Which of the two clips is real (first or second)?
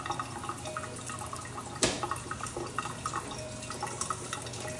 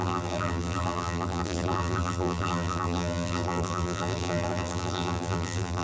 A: first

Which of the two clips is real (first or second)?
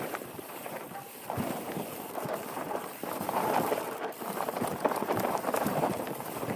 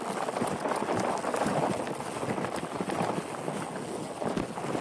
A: second